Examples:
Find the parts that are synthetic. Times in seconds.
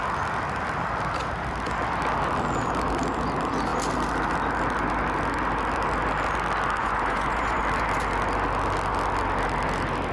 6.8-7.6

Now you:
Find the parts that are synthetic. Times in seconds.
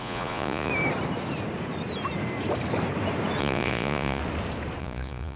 0.0-0.7; 3.4-4.2; 4.8-5.4